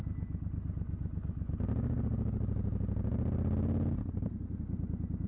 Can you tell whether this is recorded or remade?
recorded